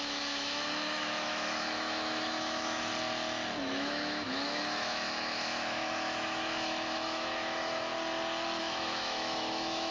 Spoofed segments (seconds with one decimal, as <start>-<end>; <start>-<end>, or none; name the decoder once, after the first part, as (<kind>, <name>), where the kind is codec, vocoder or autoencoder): 0.0-2.9 (autoencoder, DAC-VAE); 3.6-7.9; 8.6-9.9